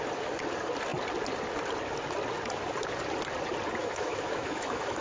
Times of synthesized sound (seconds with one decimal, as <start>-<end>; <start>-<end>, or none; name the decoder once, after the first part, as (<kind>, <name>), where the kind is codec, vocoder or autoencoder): 3.8-5.0 (autoencoder, DAC-VAE)